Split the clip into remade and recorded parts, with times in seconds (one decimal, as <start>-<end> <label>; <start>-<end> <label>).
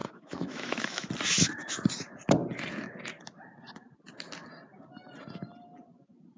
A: 0.0-1.1 remade; 1.1-6.4 recorded